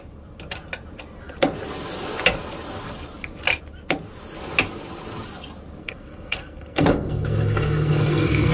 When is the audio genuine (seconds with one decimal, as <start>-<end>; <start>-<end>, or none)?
0.0-5.8